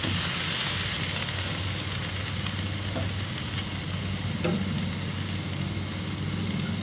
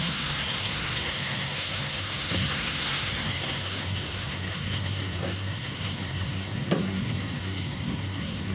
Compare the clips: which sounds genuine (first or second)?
first